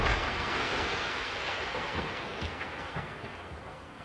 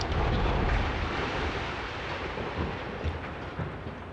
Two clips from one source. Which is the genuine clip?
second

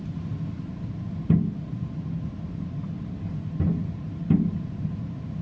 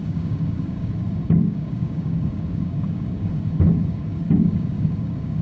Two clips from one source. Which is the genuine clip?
first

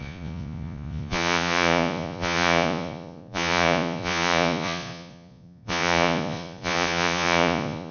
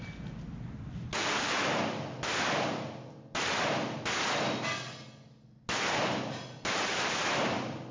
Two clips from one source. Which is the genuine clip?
second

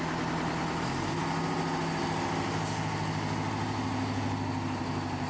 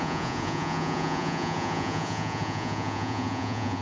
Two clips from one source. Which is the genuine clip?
first